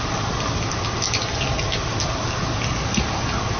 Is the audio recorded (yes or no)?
yes